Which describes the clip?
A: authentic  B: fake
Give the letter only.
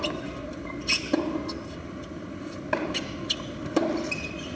A